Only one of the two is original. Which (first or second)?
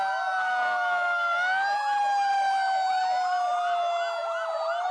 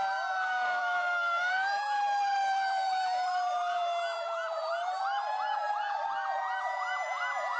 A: first